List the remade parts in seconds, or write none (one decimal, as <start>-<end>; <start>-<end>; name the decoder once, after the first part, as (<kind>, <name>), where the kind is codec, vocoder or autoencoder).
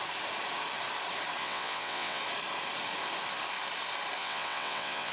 1.4-2.2 (vocoder, WaveNeXt); 4.2-5.1